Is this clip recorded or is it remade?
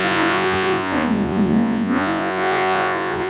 remade